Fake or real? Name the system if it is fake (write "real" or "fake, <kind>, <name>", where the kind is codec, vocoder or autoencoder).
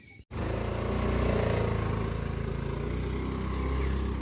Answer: real